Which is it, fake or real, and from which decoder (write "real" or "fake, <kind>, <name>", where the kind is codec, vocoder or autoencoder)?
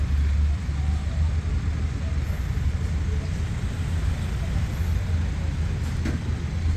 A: real